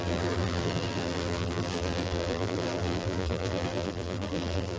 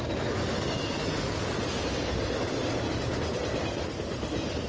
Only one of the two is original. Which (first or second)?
second